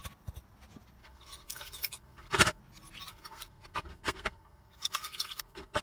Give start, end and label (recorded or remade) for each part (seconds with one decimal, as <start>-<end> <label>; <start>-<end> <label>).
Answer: 0.0-1.0 recorded; 1.0-2.6 remade; 2.6-3.1 recorded; 3.1-5.8 remade